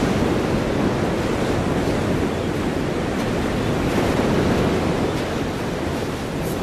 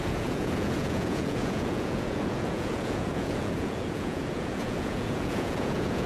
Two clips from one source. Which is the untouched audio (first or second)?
first